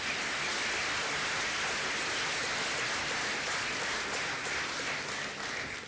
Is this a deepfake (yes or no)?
no